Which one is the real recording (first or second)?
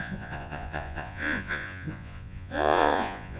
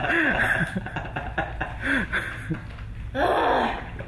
second